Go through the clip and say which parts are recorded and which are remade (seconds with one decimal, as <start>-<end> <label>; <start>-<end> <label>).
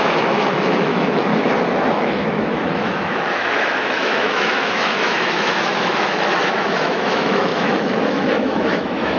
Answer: 0.0-1.3 remade; 1.3-1.9 recorded; 1.9-9.2 remade